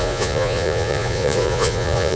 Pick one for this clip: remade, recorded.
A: remade